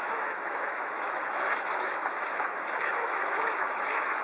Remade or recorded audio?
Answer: remade